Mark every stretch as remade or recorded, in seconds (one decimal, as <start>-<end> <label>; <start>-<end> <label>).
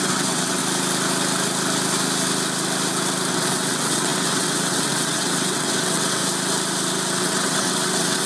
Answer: 0.0-0.6 remade; 0.6-3.3 recorded; 3.3-6.2 remade; 6.2-7.2 recorded; 7.2-8.3 remade